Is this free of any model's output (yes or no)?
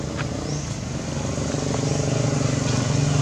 yes